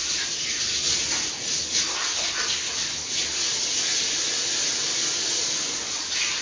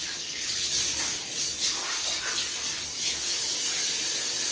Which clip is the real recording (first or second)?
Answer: first